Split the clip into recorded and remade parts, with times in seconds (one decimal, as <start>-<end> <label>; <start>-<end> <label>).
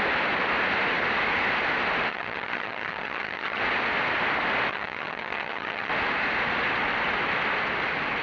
0.0-2.1 recorded; 2.1-3.6 remade; 3.6-4.7 recorded; 4.7-5.9 remade; 5.9-8.2 recorded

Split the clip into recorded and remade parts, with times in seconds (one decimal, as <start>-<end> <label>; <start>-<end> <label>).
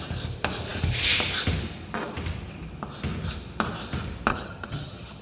0.0-4.3 recorded; 4.3-5.2 remade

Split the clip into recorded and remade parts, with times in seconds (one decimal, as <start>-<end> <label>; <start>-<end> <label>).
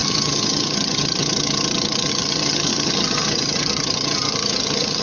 0.0-5.0 remade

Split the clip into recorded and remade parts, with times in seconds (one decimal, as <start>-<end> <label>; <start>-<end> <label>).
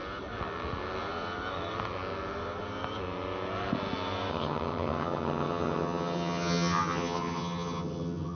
0.0-4.3 recorded; 4.3-8.3 remade